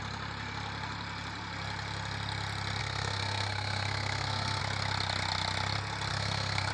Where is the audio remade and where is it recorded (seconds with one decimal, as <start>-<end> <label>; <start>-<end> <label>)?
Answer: 0.0-2.8 recorded; 2.8-4.6 remade; 4.6-6.1 recorded; 6.1-6.7 remade